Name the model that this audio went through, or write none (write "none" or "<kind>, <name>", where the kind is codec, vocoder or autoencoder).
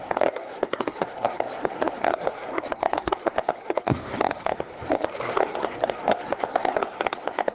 codec, SNAC